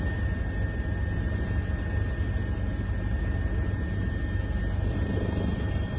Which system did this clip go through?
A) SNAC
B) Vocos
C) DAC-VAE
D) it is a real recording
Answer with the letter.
D